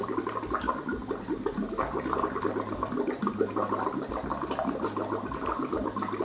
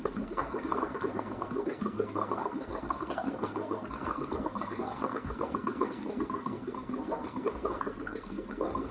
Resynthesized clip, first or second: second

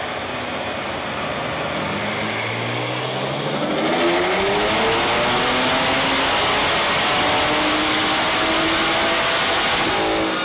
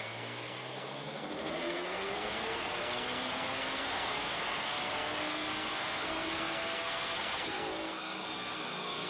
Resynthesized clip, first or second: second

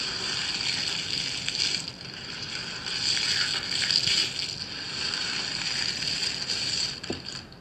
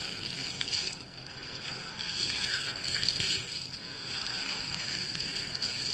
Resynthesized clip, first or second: second